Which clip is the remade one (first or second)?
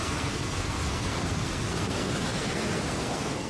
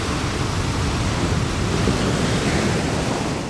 first